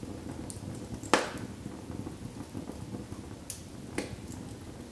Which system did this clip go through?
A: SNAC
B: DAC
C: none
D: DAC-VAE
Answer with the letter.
C